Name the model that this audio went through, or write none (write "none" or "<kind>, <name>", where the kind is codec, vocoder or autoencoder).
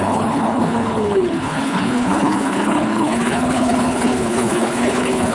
codec, HILCodec